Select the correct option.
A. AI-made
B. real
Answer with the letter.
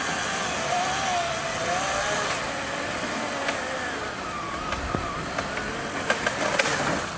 B